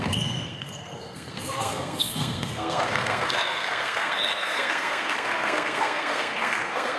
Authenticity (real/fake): fake